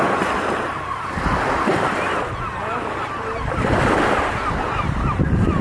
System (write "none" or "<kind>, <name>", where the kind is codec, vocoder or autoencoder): vocoder, BigVGAN v2